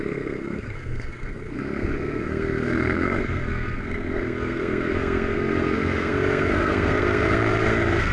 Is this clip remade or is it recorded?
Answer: remade